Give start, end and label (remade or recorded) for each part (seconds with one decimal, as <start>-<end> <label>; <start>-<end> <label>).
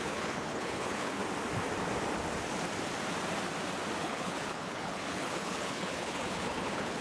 0.0-1.2 remade; 1.2-4.0 recorded; 4.0-7.0 remade